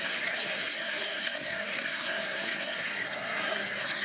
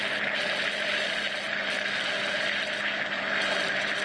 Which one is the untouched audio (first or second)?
second